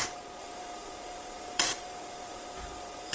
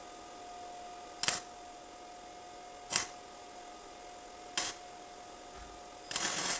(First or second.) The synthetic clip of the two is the first